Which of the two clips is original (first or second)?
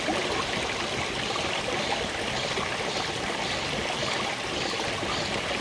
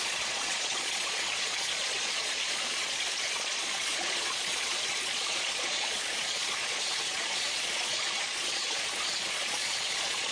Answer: first